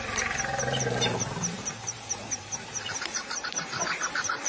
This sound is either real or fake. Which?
fake